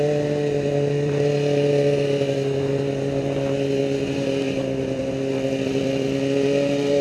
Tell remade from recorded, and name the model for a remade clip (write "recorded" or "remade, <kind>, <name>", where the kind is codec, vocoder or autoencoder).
remade, vocoder, BigVGAN v2